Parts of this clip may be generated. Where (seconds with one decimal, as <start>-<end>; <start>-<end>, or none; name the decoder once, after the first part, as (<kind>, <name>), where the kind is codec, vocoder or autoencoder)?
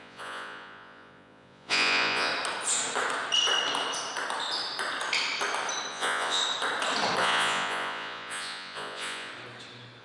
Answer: 0.0-2.3 (vocoder, Vocos); 5.9-6.4; 7.2-9.3